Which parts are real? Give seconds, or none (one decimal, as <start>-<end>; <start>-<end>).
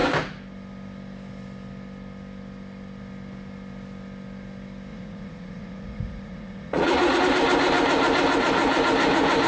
0.0-4.9; 7.2-9.5